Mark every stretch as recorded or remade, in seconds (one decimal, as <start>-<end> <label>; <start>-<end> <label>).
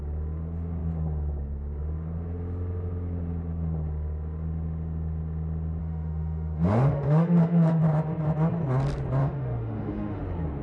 0.0-5.8 recorded; 5.8-7.8 remade; 7.8-9.2 recorded; 9.2-10.2 remade; 10.2-10.6 recorded